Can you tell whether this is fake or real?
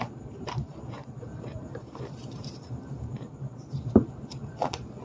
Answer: fake